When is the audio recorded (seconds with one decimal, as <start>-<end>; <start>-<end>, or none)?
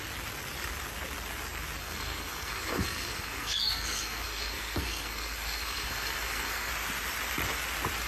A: 0.0-1.8; 6.7-8.1